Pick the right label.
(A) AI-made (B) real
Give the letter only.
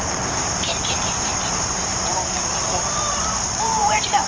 A